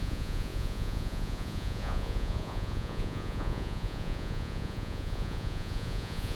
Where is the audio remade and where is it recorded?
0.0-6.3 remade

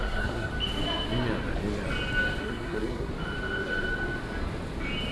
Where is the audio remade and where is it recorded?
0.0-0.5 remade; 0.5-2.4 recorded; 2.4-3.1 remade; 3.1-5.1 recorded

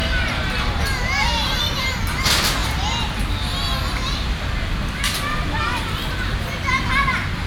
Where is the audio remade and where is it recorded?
0.0-0.8 remade; 0.8-7.5 recorded

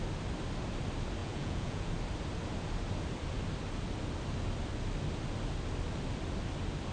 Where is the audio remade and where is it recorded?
0.0-1.2 recorded; 1.2-1.9 remade; 1.9-6.9 recorded

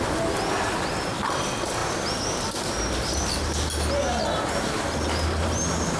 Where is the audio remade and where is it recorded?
0.0-6.0 recorded

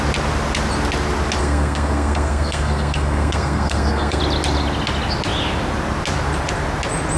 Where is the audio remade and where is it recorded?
0.0-1.4 recorded; 1.4-4.2 remade; 4.2-7.2 recorded